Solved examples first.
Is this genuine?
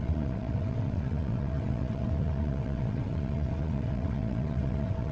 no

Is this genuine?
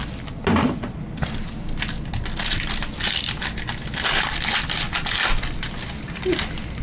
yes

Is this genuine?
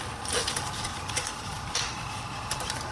no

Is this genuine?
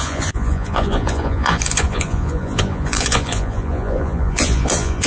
no